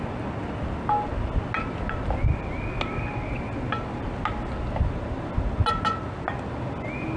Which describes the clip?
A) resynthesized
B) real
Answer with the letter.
B